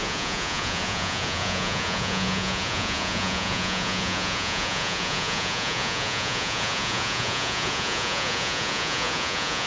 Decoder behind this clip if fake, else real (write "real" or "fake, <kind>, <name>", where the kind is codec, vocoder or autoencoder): fake, vocoder, Vocos